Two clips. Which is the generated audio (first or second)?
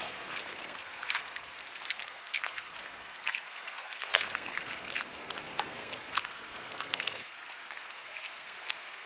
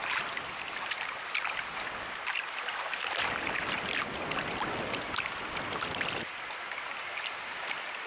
first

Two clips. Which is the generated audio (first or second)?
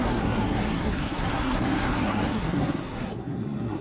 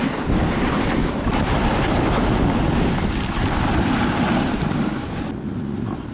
first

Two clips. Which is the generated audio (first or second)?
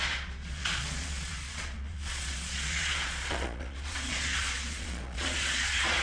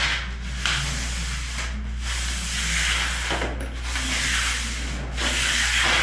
first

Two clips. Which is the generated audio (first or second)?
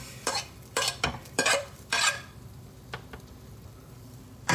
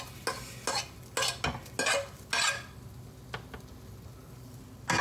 first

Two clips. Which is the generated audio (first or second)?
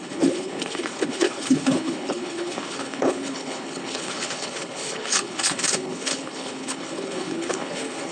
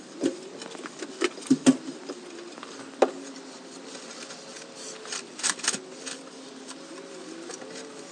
first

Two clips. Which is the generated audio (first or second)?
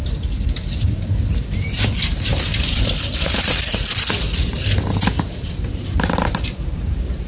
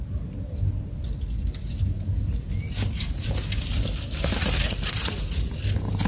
first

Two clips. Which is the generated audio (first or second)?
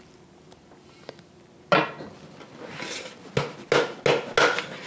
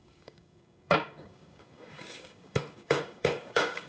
second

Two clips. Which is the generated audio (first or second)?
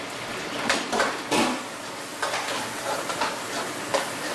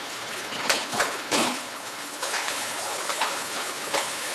second